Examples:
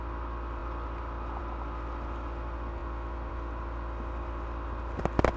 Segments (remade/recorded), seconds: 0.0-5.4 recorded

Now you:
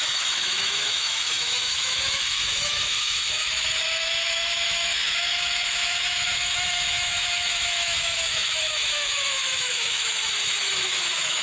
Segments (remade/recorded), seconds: 0.0-11.4 remade

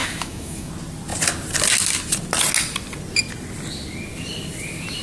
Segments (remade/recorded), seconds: 0.0-0.7 remade; 0.7-5.0 recorded

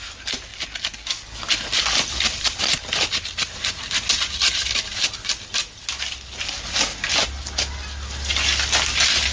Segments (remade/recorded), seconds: 0.0-9.3 recorded

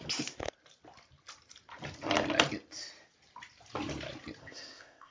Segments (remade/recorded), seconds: 0.0-4.4 recorded; 4.4-5.1 remade

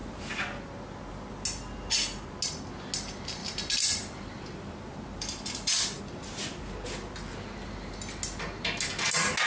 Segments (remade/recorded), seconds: 0.0-3.4 recorded; 3.4-6.0 remade; 6.0-9.5 recorded

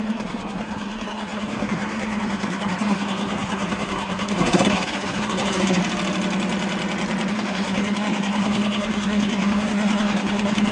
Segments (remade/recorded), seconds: 0.0-5.8 remade; 5.8-7.3 recorded; 7.3-10.7 remade